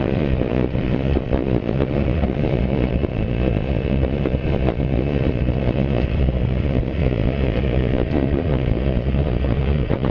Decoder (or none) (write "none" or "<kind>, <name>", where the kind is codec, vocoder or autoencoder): vocoder, Vocos